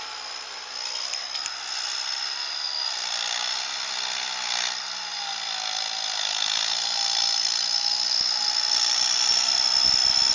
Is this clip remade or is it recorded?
recorded